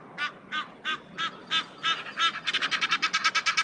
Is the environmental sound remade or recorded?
recorded